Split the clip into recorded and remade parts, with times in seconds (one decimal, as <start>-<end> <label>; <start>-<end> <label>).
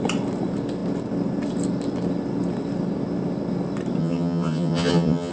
0.0-4.0 recorded; 4.0-5.3 remade